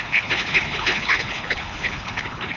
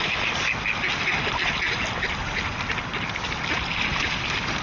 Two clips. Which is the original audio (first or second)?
second